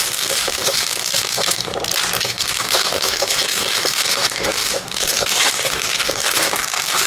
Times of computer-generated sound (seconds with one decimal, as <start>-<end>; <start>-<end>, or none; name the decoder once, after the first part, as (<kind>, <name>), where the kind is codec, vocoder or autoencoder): 0.0-1.7 (codec, DAC); 2.2-7.1